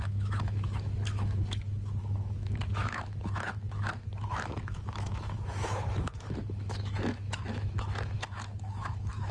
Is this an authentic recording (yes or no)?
no